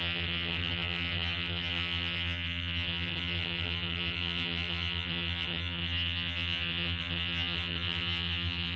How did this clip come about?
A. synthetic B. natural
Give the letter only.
A